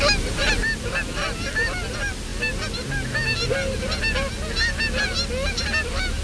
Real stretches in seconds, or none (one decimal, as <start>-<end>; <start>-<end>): 0.0-6.2